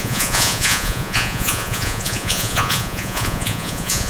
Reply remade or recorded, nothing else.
remade